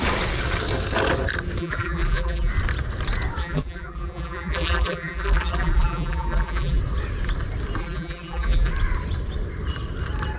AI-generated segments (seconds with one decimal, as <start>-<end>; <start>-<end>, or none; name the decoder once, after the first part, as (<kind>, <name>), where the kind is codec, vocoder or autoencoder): 1.6-2.5 (vocoder, BigVGAN v2); 3.4-6.8; 7.8-8.7